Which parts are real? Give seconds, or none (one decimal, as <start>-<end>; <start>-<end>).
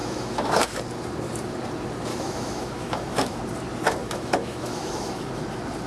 0.8-2.1; 3.4-4.0; 5.3-5.9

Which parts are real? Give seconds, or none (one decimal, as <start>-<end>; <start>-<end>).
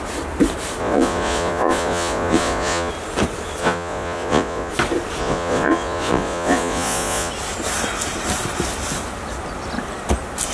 0.0-0.8; 2.9-3.6; 4.7-5.2; 7.3-10.5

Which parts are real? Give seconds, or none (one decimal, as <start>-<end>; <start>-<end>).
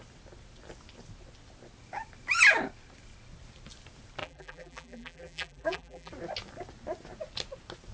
0.0-4.2; 6.1-7.9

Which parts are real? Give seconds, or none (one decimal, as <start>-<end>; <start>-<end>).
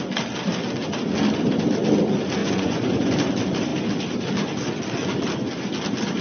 0.0-2.4; 3.1-6.2